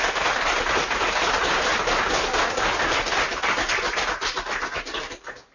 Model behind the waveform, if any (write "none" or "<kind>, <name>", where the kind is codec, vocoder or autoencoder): none